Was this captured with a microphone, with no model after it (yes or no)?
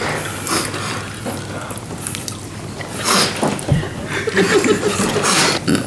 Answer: yes